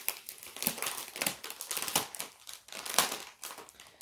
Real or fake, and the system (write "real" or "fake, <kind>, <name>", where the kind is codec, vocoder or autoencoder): real